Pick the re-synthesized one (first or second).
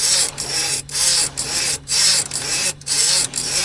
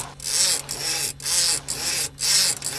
first